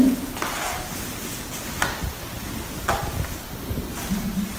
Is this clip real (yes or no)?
yes